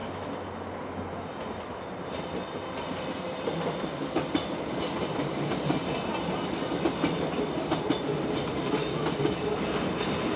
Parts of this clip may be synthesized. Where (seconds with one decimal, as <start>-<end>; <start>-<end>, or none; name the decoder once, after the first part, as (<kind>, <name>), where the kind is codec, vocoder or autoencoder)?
4.4-9.5 (vocoder, BigVGAN v2)